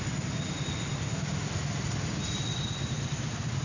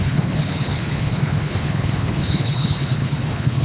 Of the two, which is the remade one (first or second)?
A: second